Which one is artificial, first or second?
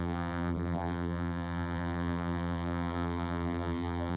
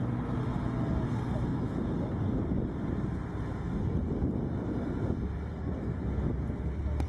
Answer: first